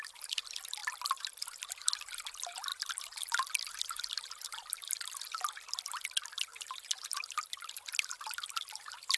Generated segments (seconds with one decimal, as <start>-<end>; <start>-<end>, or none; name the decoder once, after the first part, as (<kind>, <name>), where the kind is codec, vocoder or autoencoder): 0.8-1.4 (vocoder, BigVGAN v2); 6.5-9.2